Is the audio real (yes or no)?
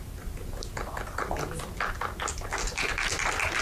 yes